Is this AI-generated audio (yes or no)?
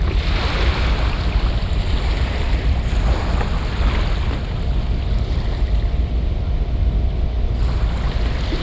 no